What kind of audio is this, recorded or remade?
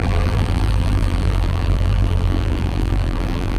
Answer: remade